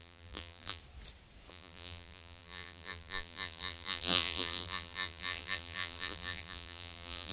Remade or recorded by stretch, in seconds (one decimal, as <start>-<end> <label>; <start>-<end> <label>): 0.0-0.8 remade; 0.8-1.5 recorded; 1.5-7.3 remade